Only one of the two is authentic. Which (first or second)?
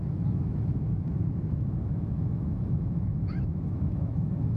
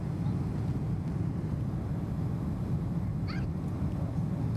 second